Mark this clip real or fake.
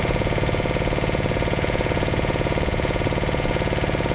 fake